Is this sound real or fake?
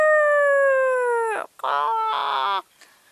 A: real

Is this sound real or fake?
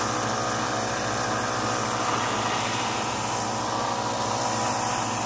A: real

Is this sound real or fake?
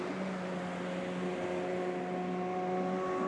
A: real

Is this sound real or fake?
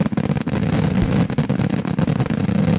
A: real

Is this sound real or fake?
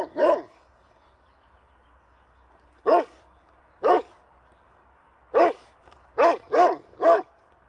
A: fake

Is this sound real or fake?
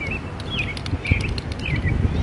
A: real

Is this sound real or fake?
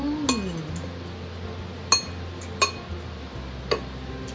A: real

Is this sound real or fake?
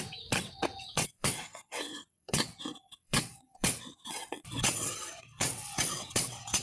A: fake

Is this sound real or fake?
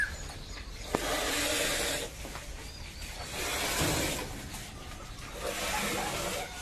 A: real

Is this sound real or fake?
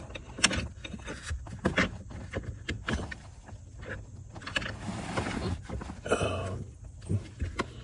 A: real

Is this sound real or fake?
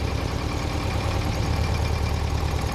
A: fake